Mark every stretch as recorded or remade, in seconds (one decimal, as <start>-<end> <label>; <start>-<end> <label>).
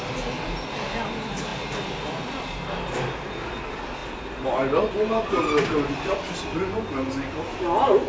0.0-8.1 recorded